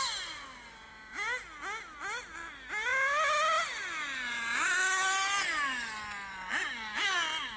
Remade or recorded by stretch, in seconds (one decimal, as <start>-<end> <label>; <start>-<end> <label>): 0.0-7.6 recorded